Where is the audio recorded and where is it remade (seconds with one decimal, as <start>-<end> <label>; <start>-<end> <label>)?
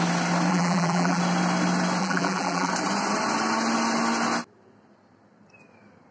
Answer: 0.0-0.5 recorded; 0.5-1.2 remade; 1.2-2.0 recorded; 2.0-2.7 remade; 2.7-6.1 recorded